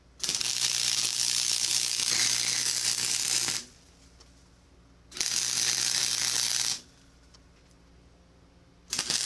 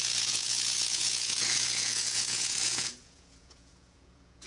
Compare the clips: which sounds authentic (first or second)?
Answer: first